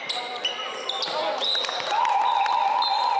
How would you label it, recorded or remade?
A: recorded